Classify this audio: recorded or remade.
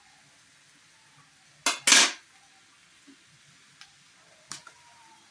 recorded